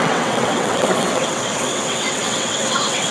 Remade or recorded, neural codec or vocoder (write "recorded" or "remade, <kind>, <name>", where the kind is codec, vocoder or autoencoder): remade, vocoder, WaveNeXt